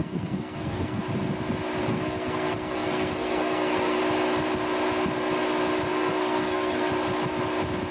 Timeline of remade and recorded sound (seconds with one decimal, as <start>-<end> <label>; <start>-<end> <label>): 0.0-1.0 remade; 1.0-1.8 recorded; 1.8-4.0 remade; 4.0-5.9 recorded; 5.9-6.9 remade; 6.9-7.9 recorded